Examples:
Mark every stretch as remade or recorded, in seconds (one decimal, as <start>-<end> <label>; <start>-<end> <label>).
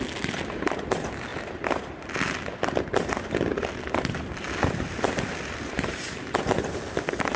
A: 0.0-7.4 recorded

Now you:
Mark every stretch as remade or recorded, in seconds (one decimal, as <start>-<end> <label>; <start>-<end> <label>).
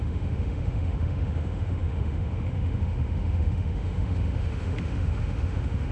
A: 0.0-5.9 remade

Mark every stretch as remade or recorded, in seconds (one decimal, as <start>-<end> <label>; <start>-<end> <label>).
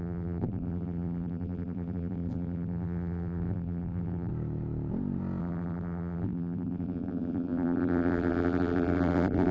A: 0.0-4.3 remade; 4.3-5.4 recorded; 5.4-9.5 remade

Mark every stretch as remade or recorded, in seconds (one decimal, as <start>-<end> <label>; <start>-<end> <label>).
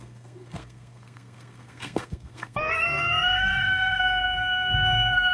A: 0.0-5.3 remade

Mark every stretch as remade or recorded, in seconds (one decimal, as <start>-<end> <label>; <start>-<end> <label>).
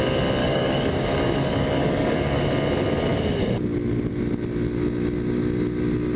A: 0.0-0.4 recorded; 0.4-2.4 remade; 2.4-6.2 recorded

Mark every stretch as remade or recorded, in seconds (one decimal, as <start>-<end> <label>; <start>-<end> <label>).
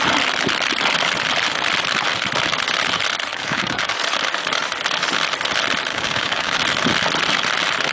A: 0.0-3.3 recorded; 3.3-3.9 remade; 3.9-5.9 recorded; 5.9-6.6 remade; 6.6-7.9 recorded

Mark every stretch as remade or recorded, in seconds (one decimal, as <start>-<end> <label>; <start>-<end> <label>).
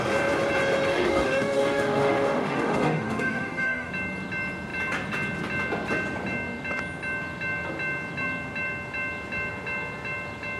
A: 0.0-0.9 recorded; 0.9-3.9 remade; 3.9-10.6 recorded